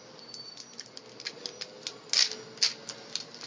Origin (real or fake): real